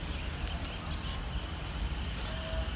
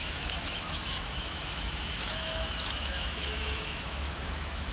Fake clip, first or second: second